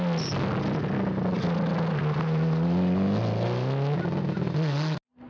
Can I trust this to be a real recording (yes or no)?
yes